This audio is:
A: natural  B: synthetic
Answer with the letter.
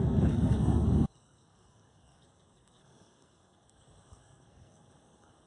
B